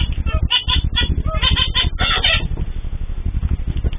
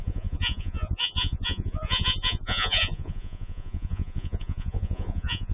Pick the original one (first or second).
first